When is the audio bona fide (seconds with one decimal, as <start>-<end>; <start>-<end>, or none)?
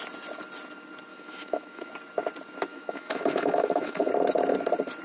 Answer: 0.0-1.1; 1.9-2.7; 4.1-5.0